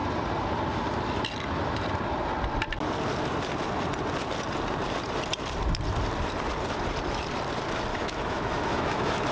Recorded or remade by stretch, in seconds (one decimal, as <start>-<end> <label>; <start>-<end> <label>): 0.0-7.9 recorded; 7.9-9.3 remade